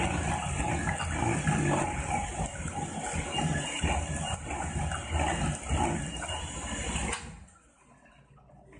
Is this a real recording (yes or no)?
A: yes